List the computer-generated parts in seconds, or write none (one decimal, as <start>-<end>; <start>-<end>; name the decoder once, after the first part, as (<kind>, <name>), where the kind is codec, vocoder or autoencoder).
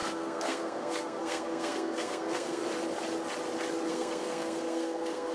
0.0-2.6 (codec, SNAC); 3.9-5.3